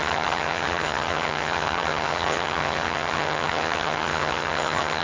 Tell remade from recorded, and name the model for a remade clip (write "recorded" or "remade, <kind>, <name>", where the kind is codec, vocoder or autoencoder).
remade, vocoder, HiFi-GAN